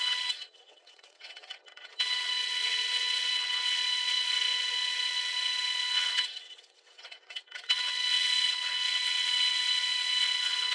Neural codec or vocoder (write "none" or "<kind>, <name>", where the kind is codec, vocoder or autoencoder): vocoder, WaveNeXt